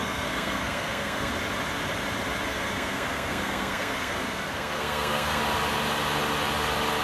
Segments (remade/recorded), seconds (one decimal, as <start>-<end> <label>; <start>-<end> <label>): 0.0-1.3 remade; 1.3-2.5 recorded; 2.5-5.4 remade; 5.4-7.0 recorded